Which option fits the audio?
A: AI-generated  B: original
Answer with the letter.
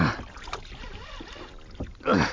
B